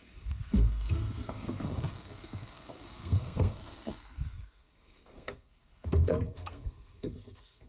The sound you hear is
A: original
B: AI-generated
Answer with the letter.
B